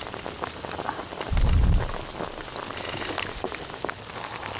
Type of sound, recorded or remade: recorded